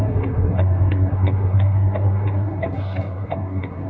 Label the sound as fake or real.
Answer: fake